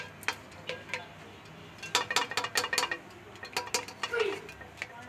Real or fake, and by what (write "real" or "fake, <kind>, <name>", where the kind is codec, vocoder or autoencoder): real